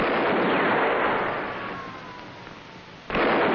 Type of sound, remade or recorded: recorded